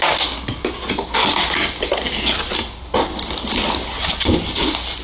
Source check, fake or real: real